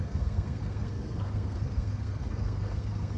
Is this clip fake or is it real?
fake